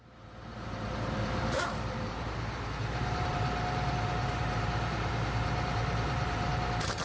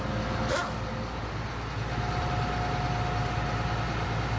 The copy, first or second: first